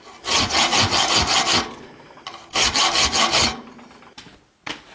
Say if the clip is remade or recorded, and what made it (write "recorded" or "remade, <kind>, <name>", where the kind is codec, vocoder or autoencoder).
recorded